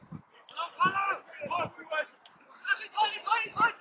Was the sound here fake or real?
real